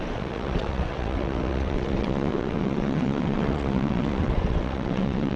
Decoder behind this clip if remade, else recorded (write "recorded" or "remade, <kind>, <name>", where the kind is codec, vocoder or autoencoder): remade, vocoder, WaveNeXt